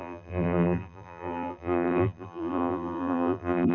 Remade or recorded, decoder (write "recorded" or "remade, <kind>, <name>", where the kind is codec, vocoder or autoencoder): remade, vocoder, BigVGAN v2